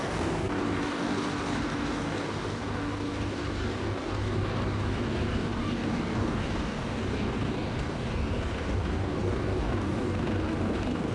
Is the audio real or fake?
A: fake